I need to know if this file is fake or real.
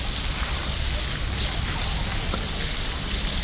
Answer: real